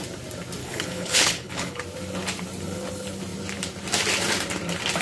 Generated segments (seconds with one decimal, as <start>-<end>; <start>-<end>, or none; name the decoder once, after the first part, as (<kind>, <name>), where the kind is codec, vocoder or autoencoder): 0.6-1.8 (codec, HILCodec)